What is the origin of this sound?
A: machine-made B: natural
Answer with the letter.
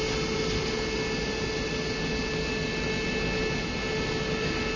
B